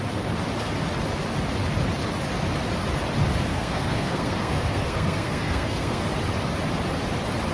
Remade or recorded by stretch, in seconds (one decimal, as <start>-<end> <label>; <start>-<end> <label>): 0.0-3.5 recorded; 3.5-6.0 remade; 6.0-7.5 recorded